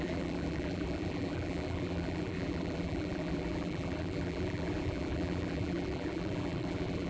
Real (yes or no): no